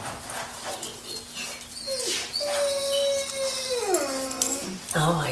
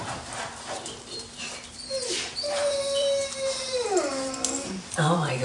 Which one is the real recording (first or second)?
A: first